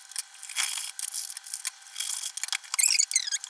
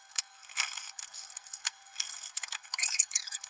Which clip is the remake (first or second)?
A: second